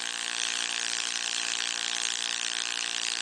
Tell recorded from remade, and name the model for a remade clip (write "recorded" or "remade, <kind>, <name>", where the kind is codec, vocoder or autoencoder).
remade, vocoder, BigVGAN v2